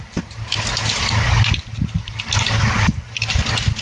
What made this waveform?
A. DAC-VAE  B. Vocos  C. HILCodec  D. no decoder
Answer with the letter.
D